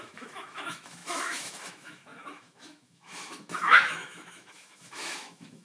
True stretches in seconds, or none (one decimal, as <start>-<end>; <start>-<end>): none